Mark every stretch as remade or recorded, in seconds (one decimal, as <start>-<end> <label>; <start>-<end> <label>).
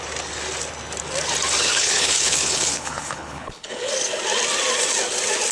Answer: 0.0-1.6 recorded; 1.6-3.9 remade; 3.9-5.5 recorded